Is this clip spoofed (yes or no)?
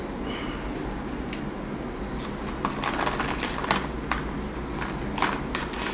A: no